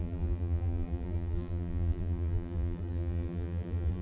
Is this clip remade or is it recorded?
remade